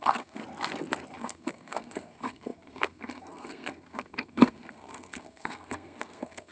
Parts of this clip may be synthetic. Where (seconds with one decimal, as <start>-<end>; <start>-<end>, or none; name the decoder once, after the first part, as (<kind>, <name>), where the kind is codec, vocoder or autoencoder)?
0.0-0.4 (codec, SNAC); 1.2-6.5